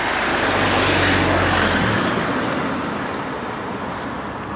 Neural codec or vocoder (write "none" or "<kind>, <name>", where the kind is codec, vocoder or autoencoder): none